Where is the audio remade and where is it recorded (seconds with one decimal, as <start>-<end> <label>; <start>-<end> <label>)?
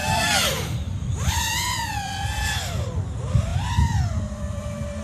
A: 0.0-3.0 remade; 3.0-3.5 recorded; 3.5-5.0 remade